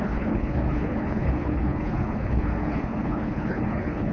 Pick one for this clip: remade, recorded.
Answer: remade